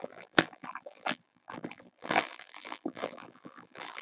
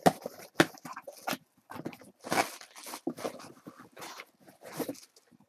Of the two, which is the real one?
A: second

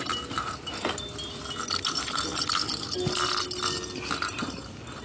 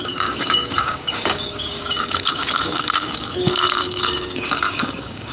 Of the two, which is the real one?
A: first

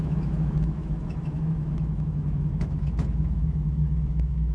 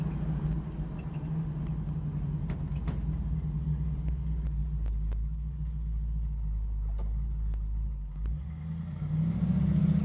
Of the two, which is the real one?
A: second